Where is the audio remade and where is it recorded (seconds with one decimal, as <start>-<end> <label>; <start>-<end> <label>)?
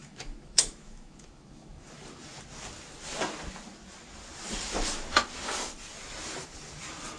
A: 0.0-1.9 remade; 1.9-7.2 recorded